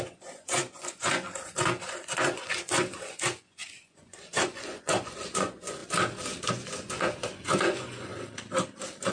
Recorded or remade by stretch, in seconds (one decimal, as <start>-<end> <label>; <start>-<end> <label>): 0.0-5.8 remade; 5.8-6.5 recorded; 6.5-8.1 remade; 8.1-9.1 recorded